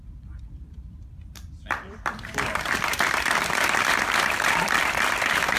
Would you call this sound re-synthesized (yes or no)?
yes